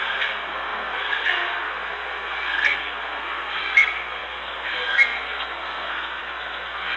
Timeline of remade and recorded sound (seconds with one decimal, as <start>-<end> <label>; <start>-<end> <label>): 0.0-7.0 remade